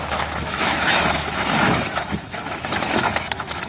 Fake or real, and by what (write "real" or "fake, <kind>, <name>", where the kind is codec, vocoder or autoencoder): fake, autoencoder, DAC-VAE